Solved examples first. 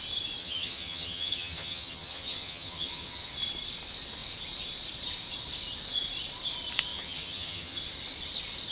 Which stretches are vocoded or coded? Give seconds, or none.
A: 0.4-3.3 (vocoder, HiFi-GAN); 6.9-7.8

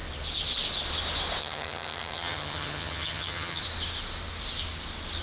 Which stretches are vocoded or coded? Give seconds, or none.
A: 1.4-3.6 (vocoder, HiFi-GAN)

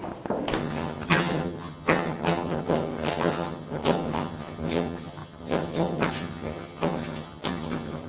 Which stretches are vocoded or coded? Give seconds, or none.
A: 0.6-8.1 (vocoder, HiFi-GAN)